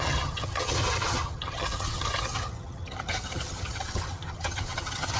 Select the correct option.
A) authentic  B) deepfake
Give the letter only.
B